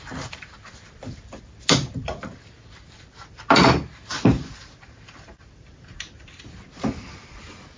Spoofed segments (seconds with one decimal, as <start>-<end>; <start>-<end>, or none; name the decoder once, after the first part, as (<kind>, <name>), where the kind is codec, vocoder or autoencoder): 0.0-3.6 (vocoder, BigVGAN v2)